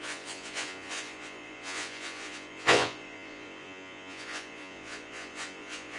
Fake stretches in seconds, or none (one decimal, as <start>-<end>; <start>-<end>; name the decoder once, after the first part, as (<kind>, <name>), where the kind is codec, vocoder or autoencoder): 0.0-6.0 (vocoder, Vocos)